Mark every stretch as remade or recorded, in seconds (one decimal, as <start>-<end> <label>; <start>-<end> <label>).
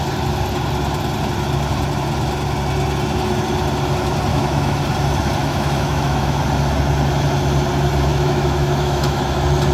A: 0.0-4.3 recorded; 4.3-4.8 remade; 4.8-5.4 recorded; 5.4-6.4 remade; 6.4-8.1 recorded; 8.1-9.2 remade; 9.2-9.7 recorded